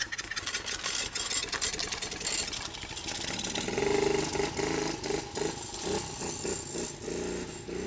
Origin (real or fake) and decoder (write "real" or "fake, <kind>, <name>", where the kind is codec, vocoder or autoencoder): real